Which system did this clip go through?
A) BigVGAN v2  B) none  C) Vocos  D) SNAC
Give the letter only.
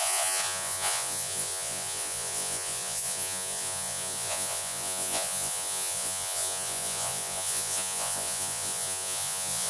C